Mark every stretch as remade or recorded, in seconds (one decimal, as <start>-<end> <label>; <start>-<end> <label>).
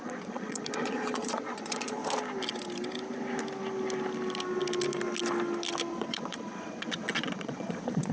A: 0.0-2.0 remade; 2.0-5.9 recorded; 5.9-8.1 remade